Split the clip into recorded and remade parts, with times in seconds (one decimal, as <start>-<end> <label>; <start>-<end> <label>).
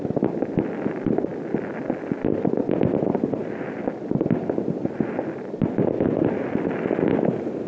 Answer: 0.0-7.7 recorded